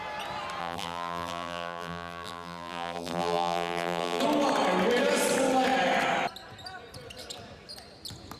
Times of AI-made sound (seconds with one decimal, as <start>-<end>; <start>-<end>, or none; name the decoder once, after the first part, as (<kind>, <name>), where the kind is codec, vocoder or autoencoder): 0.6-4.2 (vocoder, BigVGAN v2)